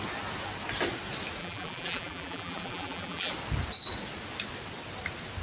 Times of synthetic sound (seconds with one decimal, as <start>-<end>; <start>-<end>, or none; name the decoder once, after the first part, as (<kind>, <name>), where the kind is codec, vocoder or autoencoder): 1.4-3.3 (vocoder, BigVGAN v2)